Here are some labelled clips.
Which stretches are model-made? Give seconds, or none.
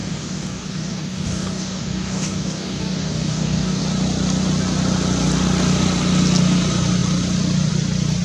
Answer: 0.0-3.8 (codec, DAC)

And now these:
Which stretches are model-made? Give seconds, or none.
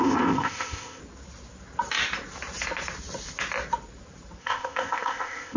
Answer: 0.0-1.0 (codec, ZipCodec); 4.4-5.6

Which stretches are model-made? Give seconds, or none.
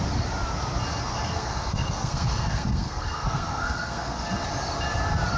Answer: 1.1-4.3 (codec, SNAC)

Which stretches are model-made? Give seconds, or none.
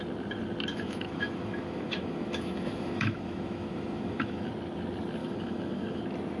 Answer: 0.7-4.5 (autoencoder, DAC-VAE); 5.2-6.0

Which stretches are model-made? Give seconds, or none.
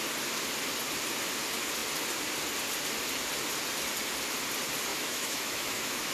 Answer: 4.9-6.1 (autoencoder, DAC-VAE)